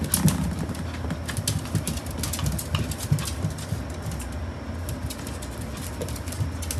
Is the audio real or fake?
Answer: real